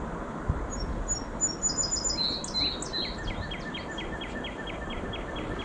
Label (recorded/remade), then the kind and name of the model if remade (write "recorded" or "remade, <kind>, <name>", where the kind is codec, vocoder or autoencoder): recorded